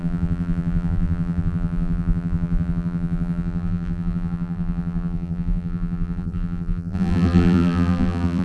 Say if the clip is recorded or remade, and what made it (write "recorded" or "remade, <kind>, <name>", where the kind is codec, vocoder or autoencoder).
remade, vocoder, BigVGAN v2